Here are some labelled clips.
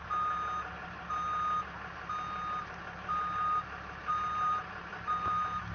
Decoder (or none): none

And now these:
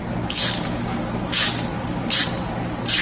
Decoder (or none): none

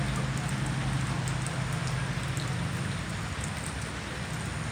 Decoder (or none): none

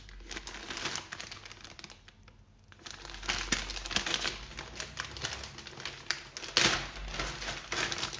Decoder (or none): none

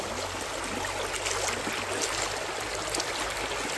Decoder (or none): none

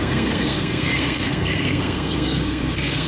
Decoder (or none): codec, SNAC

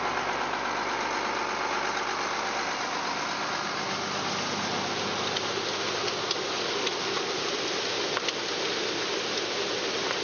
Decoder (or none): none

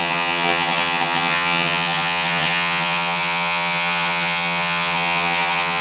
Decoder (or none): vocoder, HiFi-GAN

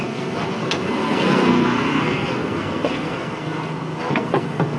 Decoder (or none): codec, SNAC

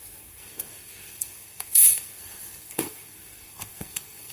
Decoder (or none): codec, SNAC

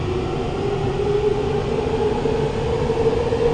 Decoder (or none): none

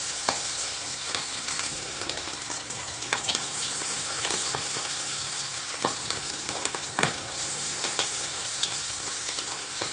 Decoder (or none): codec, SNAC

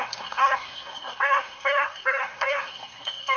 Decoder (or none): codec, SNAC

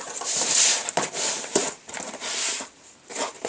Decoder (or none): vocoder, BigVGAN v2